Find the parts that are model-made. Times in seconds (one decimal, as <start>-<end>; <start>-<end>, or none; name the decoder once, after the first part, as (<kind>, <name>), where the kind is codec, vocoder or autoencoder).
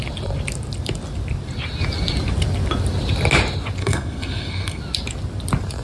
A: 3.8-4.8 (codec, SNAC)